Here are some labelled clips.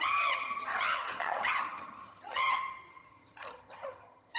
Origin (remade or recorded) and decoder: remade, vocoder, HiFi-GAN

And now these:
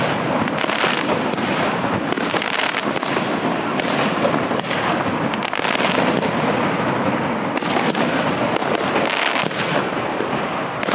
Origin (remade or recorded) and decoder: recorded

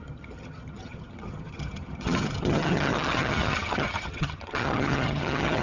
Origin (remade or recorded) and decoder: remade, vocoder, HiFi-GAN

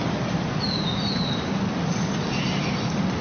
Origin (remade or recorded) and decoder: recorded